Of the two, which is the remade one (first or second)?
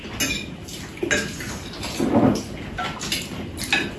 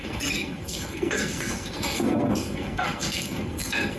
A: second